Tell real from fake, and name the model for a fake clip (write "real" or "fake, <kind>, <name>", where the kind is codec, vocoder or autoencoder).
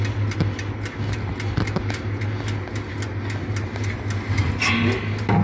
real